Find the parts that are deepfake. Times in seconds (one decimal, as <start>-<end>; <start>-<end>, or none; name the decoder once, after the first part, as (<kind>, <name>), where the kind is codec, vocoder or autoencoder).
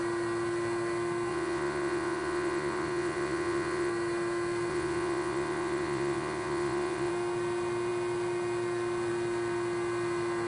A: 1.3-3.9 (vocoder, Vocos); 4.7-7.1